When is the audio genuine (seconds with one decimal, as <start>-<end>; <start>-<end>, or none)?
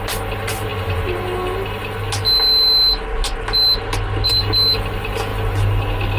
0.0-6.2